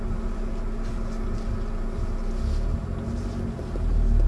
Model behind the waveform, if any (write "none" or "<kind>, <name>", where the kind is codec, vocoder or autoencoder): none